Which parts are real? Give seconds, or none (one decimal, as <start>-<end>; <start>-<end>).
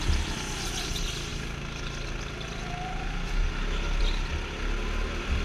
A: 0.0-5.4